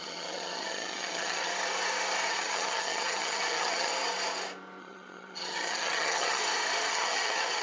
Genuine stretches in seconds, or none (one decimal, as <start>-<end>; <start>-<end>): 1.5-2.3; 3.9-4.8; 6.4-6.9